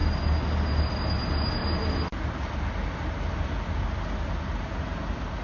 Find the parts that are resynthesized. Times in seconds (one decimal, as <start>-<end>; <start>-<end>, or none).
none